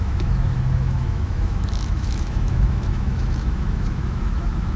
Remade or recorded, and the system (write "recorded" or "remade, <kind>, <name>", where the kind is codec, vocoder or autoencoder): remade, autoencoder, DAC-VAE